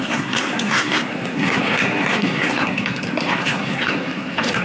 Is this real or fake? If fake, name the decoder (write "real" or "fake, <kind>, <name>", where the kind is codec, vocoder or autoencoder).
fake, codec, SNAC